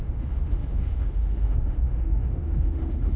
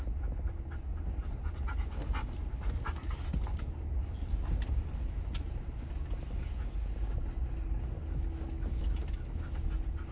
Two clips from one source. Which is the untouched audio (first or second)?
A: second